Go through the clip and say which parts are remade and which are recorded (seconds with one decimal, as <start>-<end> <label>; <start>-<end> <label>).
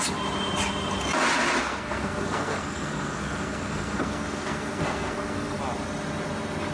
0.0-1.6 recorded; 1.6-5.6 remade; 5.6-6.7 recorded